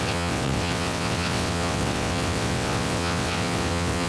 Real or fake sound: fake